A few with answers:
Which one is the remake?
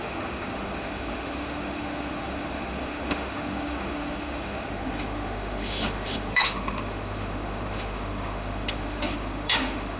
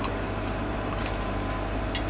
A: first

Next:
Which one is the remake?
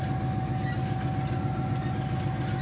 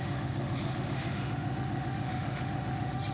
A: second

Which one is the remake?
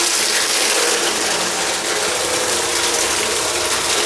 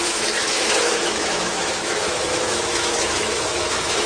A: second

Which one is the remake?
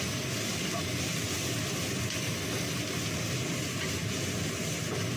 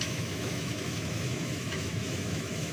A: second